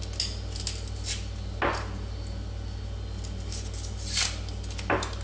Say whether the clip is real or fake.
real